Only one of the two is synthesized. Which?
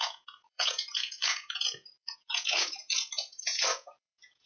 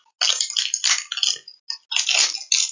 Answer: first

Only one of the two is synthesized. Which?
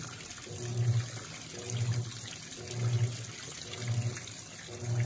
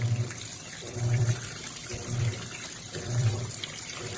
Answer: second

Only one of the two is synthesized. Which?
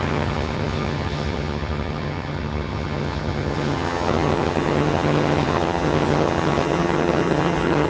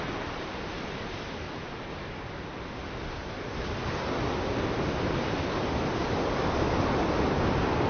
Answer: first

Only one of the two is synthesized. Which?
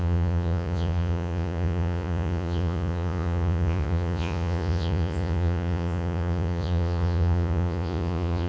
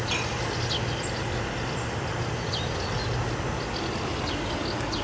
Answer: first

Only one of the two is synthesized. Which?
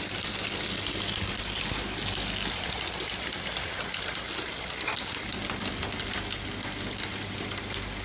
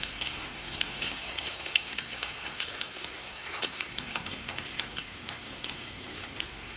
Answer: second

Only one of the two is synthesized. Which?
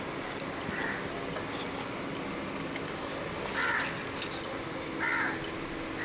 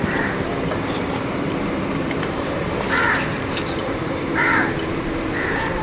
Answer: second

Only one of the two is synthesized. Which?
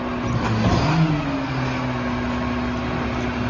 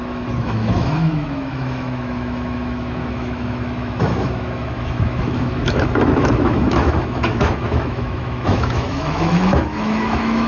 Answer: second